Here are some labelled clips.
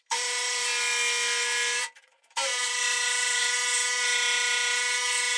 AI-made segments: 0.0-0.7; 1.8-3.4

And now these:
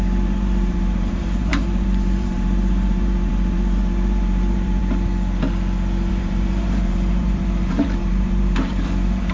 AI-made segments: 0.0-4.8; 6.1-9.3

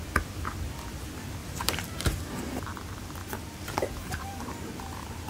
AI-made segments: 1.4-2.4; 3.2-5.3

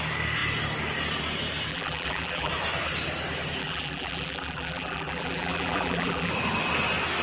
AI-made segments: 1.7-2.5; 3.6-6.3

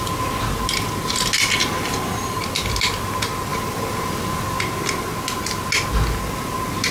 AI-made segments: none

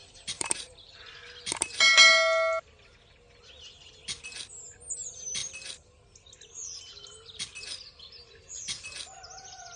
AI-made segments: 0.0-1.0

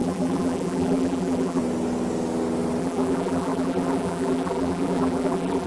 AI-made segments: 0.0-1.6; 2.8-5.7